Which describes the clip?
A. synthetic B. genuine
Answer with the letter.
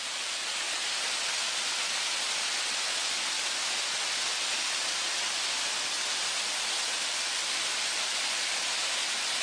B